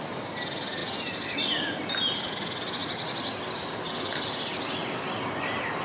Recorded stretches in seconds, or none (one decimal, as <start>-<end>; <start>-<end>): 0.0-5.8